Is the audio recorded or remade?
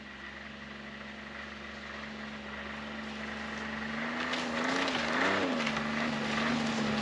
recorded